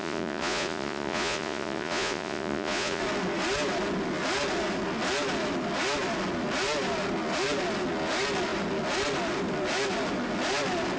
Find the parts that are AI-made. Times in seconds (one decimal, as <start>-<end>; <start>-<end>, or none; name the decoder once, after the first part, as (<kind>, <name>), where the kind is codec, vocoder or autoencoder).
0.0-3.0 (vocoder, Vocos)